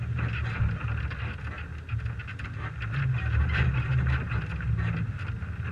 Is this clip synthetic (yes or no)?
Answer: no